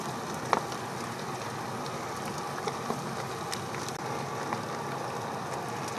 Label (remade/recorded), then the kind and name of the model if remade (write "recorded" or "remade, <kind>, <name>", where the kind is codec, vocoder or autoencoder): recorded